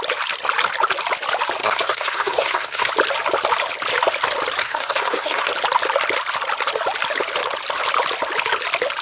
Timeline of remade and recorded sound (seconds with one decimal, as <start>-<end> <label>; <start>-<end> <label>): 0.0-1.6 recorded; 1.6-2.9 remade; 2.9-4.6 recorded; 4.6-5.5 remade; 5.5-9.0 recorded